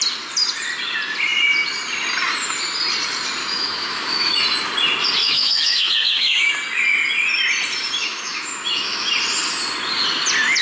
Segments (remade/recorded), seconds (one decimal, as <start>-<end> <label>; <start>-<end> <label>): 0.0-3.4 recorded; 3.4-4.4 remade; 4.4-5.2 recorded; 5.2-6.5 remade; 6.5-8.0 recorded; 8.0-9.1 remade; 9.1-10.6 recorded